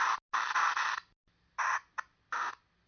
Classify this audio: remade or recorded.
recorded